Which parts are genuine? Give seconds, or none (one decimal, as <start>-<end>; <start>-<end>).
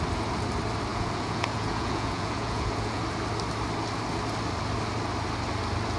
0.0-0.9; 3.0-6.0